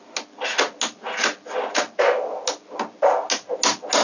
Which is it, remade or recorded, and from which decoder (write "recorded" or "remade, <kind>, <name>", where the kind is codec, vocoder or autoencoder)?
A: recorded